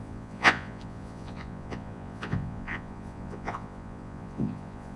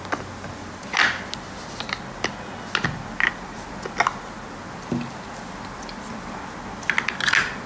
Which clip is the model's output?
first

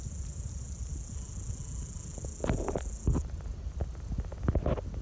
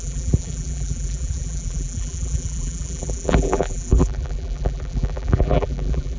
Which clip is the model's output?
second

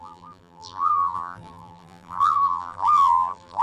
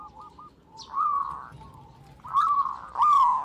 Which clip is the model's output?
first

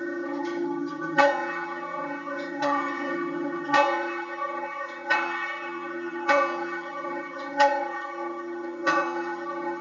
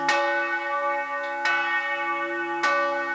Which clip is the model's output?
first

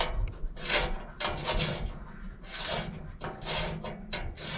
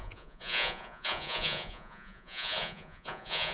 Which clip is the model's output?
second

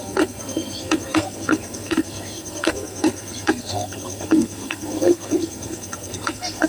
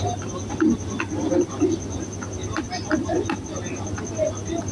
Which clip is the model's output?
first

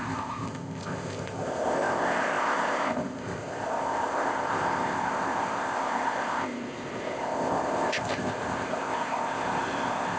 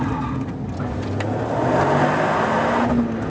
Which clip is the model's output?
first